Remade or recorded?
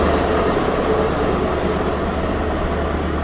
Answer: recorded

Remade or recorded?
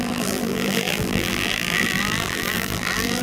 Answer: remade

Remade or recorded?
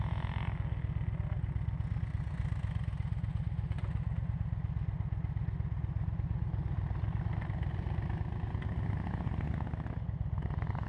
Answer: recorded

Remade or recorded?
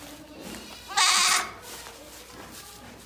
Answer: recorded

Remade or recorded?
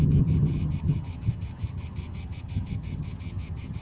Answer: remade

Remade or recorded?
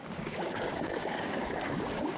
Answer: remade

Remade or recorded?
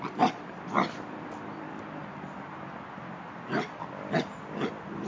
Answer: recorded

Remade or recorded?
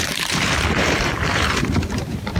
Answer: remade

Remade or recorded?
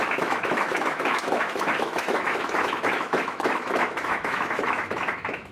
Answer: remade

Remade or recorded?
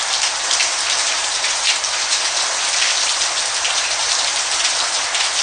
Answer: recorded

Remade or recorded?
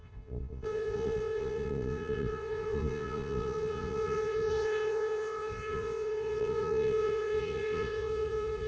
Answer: remade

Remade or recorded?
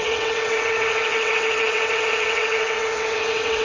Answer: remade